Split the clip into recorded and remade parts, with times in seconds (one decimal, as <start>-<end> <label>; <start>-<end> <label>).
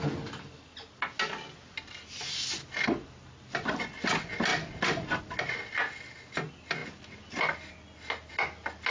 0.0-8.9 recorded